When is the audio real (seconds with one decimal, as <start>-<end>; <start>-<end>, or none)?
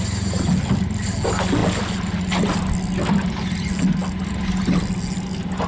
0.0-5.7